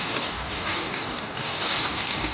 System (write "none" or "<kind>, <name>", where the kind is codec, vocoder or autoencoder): codec, DAC